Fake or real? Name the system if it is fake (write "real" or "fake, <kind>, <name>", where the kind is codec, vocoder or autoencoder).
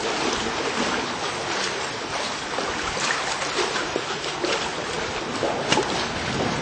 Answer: real